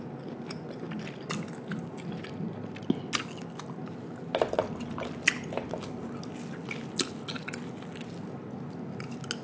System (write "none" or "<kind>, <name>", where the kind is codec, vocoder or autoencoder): none